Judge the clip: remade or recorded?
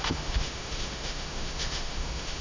remade